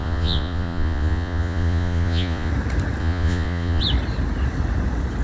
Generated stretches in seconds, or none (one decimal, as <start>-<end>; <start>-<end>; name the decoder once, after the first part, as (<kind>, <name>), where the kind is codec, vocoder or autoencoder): 0.0-2.5 (vocoder, Vocos); 3.0-3.8